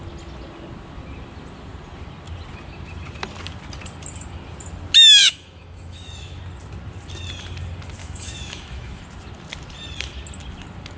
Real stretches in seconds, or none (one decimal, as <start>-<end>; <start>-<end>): 0.0-5.2; 6.4-8.0; 9.0-11.0

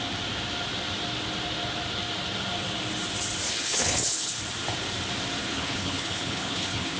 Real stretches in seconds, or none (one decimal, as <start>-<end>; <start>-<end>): 0.0-3.5; 4.4-5.4

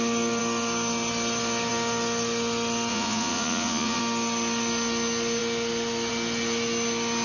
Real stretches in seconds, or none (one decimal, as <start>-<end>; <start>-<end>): 0.0-2.9; 4.0-7.2

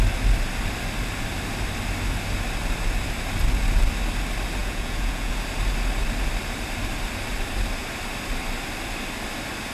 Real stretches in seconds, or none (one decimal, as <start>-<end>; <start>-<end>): 0.0-4.6; 5.3-9.7

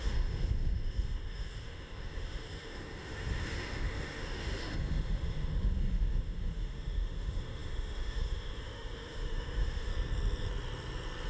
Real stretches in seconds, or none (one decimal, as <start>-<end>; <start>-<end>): 9.9-11.3

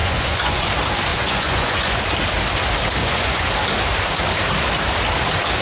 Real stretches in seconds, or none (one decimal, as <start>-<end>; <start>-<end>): 0.7-1.1; 2.0-3.0; 3.5-5.6

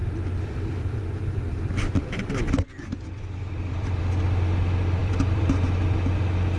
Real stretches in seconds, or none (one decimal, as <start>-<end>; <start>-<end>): 4.0-5.0; 5.8-6.6

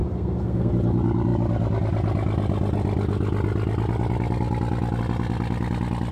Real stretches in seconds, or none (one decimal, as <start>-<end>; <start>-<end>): 0.7-6.1